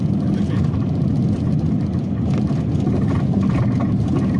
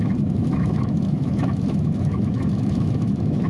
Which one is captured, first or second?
first